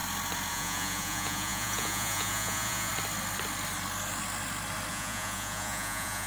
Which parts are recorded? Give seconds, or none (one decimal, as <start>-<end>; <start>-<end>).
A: 0.0-0.5; 2.9-4.9